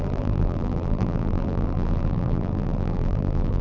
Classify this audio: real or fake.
fake